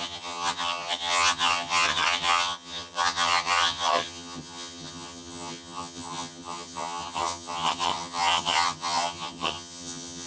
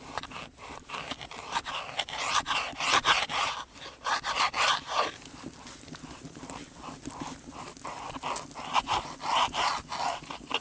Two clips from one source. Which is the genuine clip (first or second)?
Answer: second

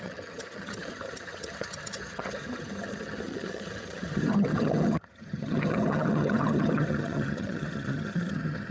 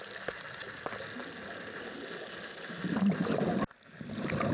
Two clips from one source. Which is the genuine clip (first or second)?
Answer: second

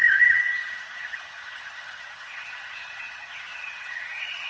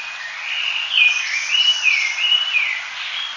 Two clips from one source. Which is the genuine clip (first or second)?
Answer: second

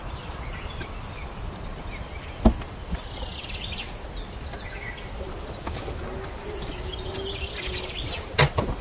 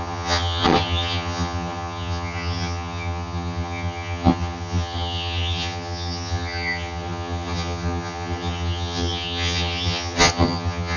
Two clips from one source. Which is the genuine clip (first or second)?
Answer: first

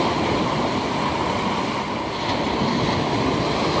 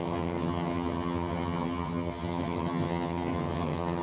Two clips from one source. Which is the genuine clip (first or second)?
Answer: first